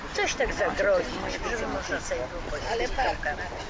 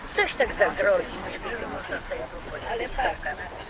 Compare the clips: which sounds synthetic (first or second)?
second